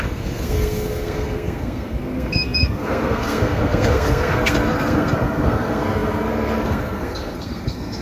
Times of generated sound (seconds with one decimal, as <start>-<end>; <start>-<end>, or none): 0.0-8.0

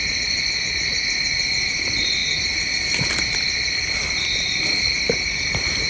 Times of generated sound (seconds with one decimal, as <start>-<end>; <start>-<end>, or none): none

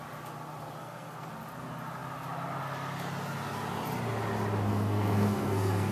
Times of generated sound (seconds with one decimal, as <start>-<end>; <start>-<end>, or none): 0.8-1.3; 4.7-5.9